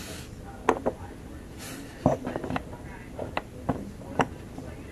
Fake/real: real